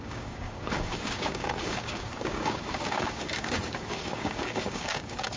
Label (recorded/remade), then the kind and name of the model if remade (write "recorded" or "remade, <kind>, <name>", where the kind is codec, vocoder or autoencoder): remade, codec, DAC